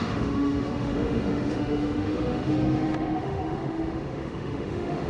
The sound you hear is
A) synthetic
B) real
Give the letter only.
A